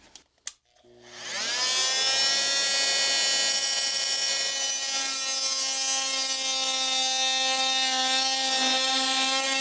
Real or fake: real